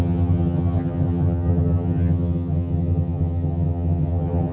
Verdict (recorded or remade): remade